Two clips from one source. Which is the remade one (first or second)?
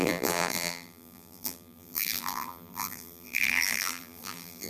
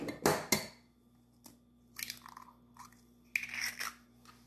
first